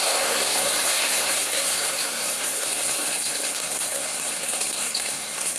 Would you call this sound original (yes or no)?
no